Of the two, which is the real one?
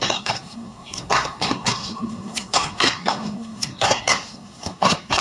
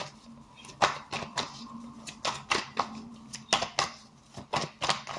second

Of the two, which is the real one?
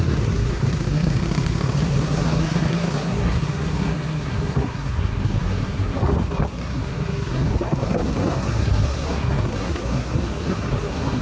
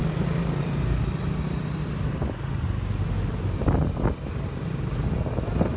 second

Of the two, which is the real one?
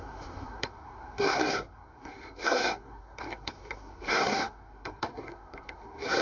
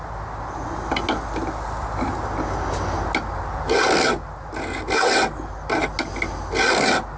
second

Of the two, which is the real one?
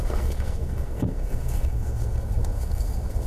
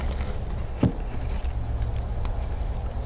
second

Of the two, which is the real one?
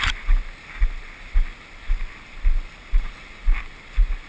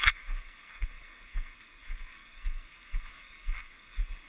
first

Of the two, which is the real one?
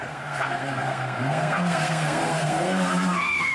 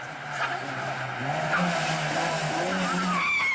second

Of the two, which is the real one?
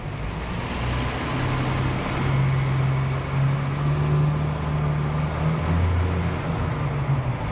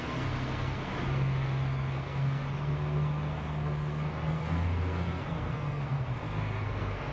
first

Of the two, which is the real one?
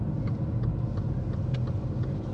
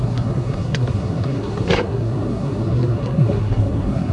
first